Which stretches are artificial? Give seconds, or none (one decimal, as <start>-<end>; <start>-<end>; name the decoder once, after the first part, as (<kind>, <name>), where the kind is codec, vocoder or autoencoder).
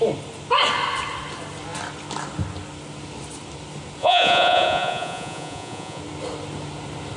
4.0-6.0 (vocoder, Vocos)